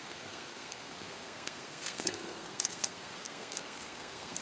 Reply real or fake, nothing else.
fake